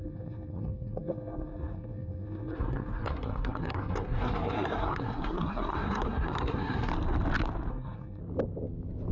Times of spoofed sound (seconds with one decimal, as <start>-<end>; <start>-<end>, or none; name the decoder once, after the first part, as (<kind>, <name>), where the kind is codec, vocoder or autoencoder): 0.0-6.9 (codec, SNAC); 7.7-8.2